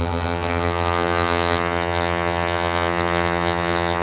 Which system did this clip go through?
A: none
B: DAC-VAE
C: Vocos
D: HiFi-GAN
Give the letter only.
D